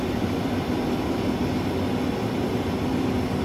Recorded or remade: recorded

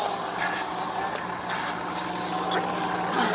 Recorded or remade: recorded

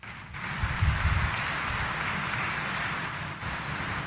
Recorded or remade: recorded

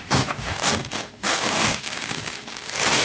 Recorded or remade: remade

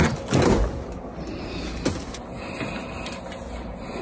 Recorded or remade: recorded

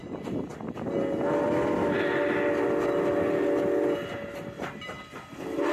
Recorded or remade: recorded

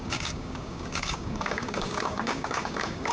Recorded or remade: remade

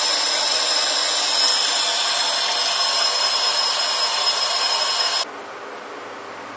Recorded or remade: recorded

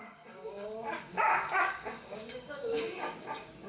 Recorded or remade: remade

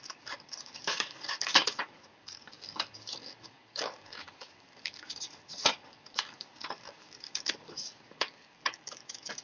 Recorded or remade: remade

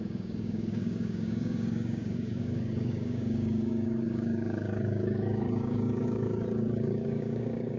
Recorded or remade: remade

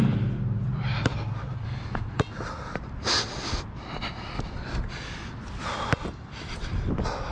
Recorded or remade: recorded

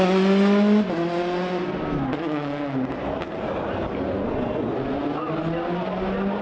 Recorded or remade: recorded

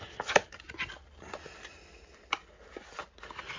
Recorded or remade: recorded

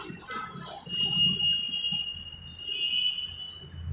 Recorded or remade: recorded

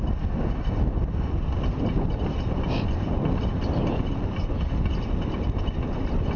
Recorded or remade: recorded